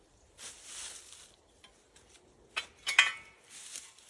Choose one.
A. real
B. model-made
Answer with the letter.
A